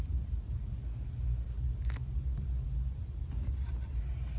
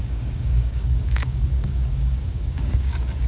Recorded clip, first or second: first